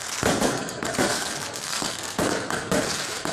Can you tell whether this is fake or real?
fake